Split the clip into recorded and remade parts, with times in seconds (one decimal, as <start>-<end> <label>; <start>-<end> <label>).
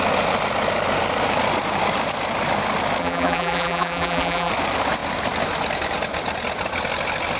0.0-3.0 recorded; 3.0-4.5 remade; 4.5-7.4 recorded